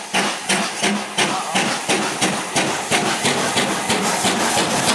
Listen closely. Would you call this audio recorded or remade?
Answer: recorded